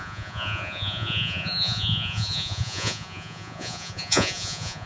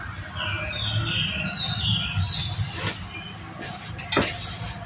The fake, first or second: first